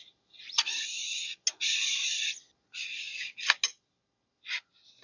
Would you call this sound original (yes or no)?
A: yes